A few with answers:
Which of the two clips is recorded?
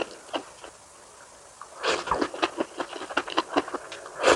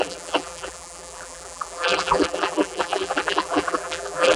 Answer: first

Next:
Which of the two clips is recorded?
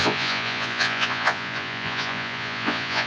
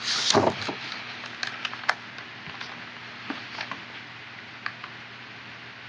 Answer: second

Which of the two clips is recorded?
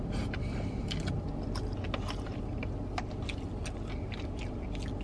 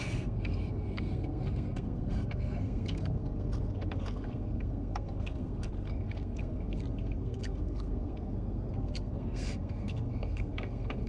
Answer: first